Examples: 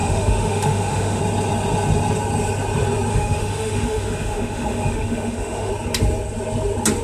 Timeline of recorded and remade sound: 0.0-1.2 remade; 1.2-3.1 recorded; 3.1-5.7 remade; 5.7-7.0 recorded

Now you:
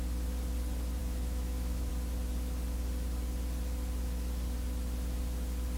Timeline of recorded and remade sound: 0.0-1.0 recorded; 1.0-1.9 remade; 1.9-5.8 recorded

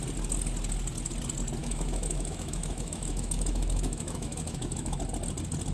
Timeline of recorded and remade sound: 0.0-1.6 recorded; 1.6-5.0 remade; 5.0-5.7 recorded

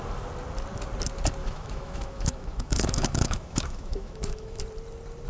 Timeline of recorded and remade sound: 0.0-1.4 recorded; 1.4-4.6 remade; 4.6-5.3 recorded

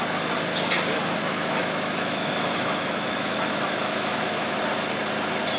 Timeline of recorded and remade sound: 0.0-1.2 recorded; 1.2-4.6 remade; 4.6-5.6 recorded

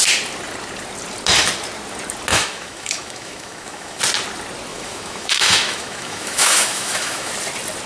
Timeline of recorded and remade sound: 0.0-2.3 recorded; 2.3-4.0 remade; 4.0-4.7 recorded; 4.7-7.3 remade; 7.3-7.9 recorded

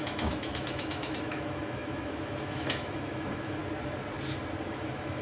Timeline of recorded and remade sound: 0.0-3.6 remade; 3.6-4.7 recorded; 4.7-5.2 remade

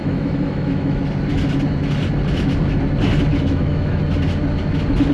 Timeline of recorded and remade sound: 0.0-1.0 remade; 1.0-3.3 recorded; 3.3-4.0 remade; 4.0-5.1 recorded